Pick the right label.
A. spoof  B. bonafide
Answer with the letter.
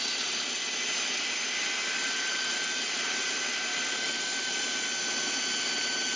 B